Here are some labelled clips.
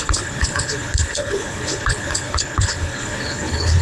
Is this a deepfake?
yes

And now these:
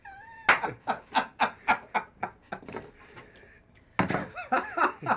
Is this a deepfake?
no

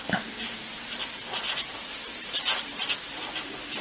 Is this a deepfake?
no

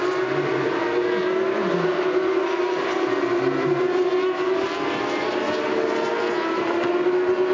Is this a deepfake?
no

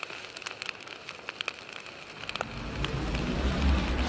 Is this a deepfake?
no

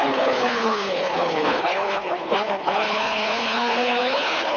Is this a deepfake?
yes